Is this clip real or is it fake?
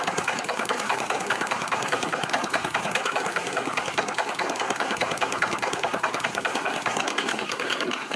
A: fake